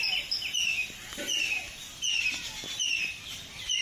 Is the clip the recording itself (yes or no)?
yes